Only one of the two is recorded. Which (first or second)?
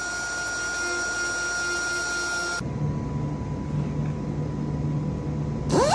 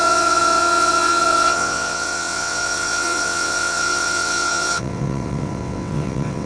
first